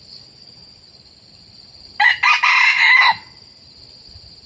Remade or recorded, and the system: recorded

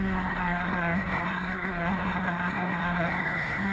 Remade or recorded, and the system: remade, codec, SNAC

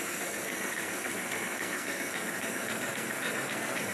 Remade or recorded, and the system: remade, codec, SNAC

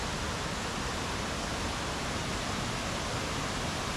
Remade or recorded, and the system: recorded